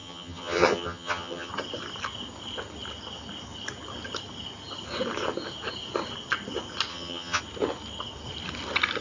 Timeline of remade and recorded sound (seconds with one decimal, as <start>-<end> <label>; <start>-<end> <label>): 0.0-1.5 remade; 1.5-6.9 recorded; 6.9-7.4 remade; 7.4-9.0 recorded